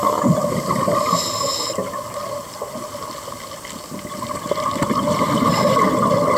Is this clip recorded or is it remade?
recorded